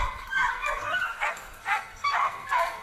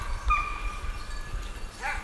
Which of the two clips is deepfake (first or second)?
first